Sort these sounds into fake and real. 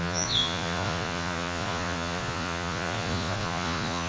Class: fake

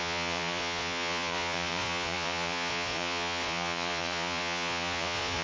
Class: fake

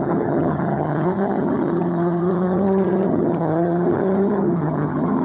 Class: fake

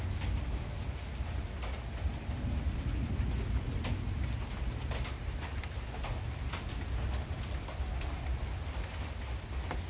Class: real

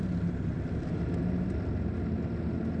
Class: real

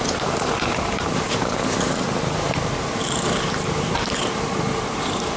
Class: fake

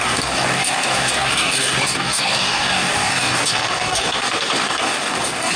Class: fake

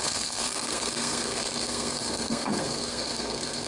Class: fake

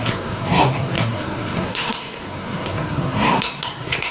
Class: fake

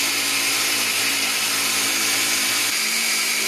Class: fake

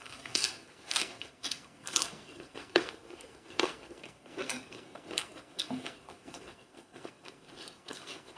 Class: fake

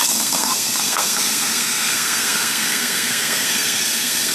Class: fake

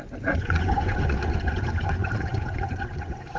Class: fake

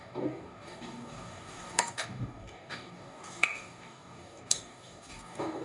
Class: fake